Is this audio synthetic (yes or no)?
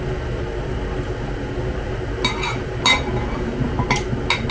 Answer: no